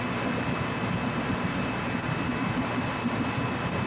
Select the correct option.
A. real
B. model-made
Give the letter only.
A